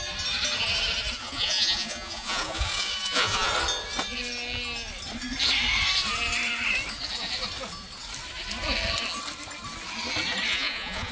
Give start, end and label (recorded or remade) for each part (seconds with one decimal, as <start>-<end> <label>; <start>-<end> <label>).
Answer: 0.0-1.2 recorded; 1.2-3.5 remade; 3.5-10.5 recorded; 10.5-11.1 remade